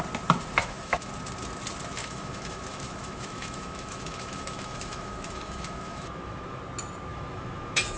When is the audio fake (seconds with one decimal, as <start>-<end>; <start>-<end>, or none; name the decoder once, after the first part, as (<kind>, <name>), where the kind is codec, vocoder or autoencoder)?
0.6-1.1 (autoencoder, DAC-VAE); 2.0-6.6; 7.1-8.0